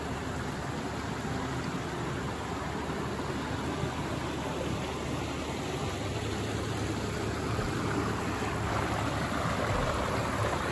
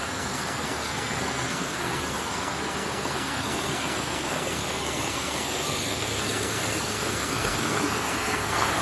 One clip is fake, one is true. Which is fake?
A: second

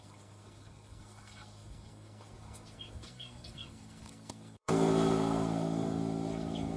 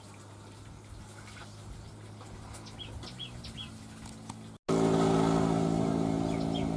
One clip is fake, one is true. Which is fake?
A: first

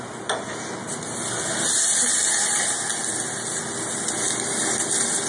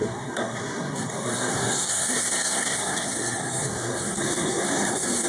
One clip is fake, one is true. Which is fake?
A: second